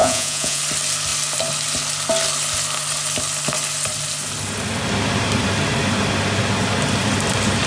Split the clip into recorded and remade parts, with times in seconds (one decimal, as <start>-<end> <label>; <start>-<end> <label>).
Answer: 0.0-0.6 remade; 0.6-7.7 recorded